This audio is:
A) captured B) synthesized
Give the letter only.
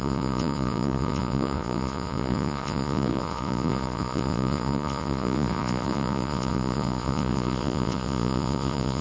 B